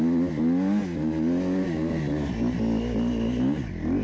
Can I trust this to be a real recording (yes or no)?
yes